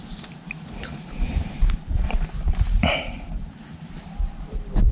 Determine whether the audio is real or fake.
fake